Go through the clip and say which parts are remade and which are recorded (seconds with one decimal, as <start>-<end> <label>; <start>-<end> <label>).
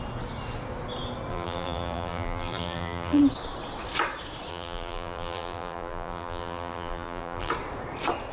0.0-1.3 recorded; 1.3-3.2 remade; 3.2-4.5 recorded; 4.5-7.5 remade; 7.5-8.3 recorded